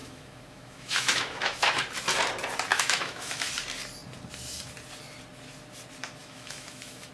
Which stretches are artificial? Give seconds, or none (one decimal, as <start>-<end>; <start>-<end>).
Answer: 0.0-1.8; 2.7-3.5; 6.2-7.1

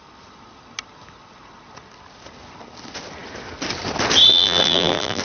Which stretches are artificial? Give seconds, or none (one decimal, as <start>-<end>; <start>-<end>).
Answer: 4.3-5.2

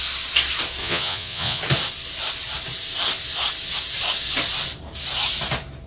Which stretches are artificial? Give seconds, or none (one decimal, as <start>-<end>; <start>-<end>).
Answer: 0.8-1.6

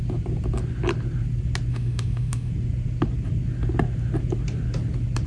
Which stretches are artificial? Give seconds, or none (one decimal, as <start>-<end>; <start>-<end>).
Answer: 1.7-2.5